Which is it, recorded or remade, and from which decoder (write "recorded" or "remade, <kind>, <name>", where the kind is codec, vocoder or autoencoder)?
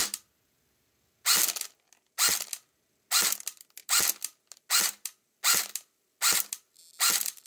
recorded